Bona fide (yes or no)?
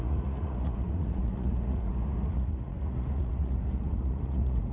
no